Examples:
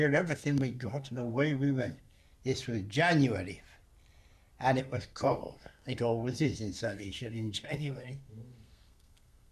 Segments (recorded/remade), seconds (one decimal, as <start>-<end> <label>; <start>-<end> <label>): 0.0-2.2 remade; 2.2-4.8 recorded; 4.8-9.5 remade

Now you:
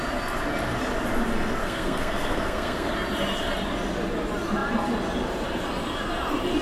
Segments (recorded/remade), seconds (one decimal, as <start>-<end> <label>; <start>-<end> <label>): 0.0-1.6 recorded; 1.6-2.9 remade; 2.9-6.6 recorded

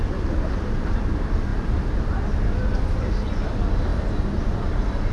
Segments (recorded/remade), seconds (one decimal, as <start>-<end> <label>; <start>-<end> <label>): 0.0-5.1 recorded

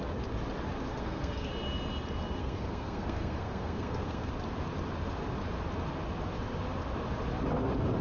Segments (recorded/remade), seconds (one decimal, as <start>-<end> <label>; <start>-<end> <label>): 0.0-0.9 recorded; 0.9-1.5 remade; 1.5-2.4 recorded; 2.4-4.3 remade; 4.3-8.0 recorded

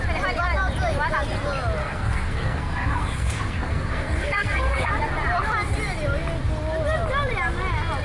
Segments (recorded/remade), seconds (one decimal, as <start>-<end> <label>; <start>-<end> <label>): 0.0-1.8 recorded; 1.8-4.9 remade; 4.9-8.0 recorded

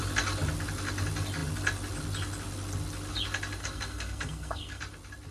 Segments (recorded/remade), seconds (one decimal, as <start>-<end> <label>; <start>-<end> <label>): 0.0-3.6 recorded; 3.6-4.8 remade; 4.8-5.3 recorded

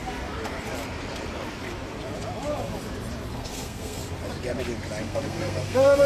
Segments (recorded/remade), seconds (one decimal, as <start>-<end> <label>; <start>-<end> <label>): 0.0-3.3 recorded; 3.3-4.0 remade; 4.0-5.0 recorded; 5.0-6.1 remade

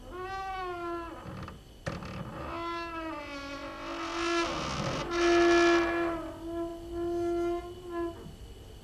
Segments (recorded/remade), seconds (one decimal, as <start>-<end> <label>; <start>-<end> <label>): 0.0-8.8 recorded